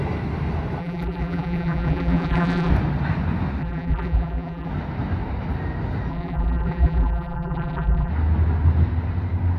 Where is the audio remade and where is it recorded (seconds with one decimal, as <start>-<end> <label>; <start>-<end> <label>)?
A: 0.0-0.8 recorded; 0.8-2.7 remade; 2.7-3.6 recorded; 3.6-4.7 remade; 4.7-6.1 recorded; 6.1-8.1 remade; 8.1-9.6 recorded